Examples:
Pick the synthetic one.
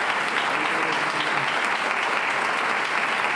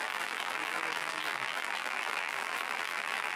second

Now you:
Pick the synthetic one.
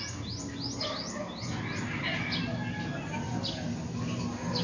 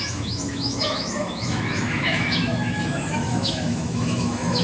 second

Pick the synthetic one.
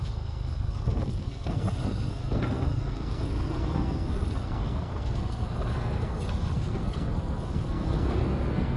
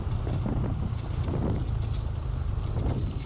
first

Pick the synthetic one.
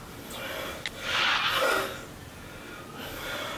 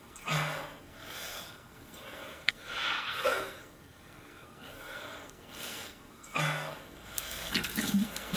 second